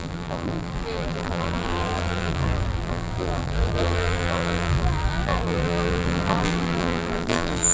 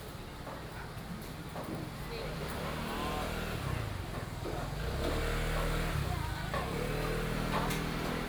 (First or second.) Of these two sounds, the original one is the second